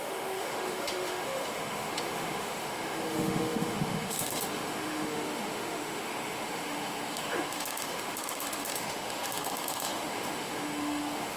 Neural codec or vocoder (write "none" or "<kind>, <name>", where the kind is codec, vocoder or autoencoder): autoencoder, DAC-VAE